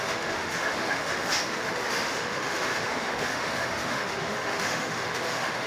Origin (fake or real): fake